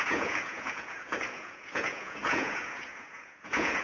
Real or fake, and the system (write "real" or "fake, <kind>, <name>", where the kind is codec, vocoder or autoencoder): fake, vocoder, Vocos